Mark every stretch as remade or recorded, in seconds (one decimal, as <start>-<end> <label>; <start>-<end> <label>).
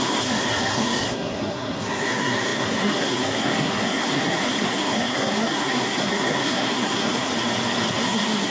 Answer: 0.0-7.3 remade; 7.3-7.9 recorded; 7.9-8.5 remade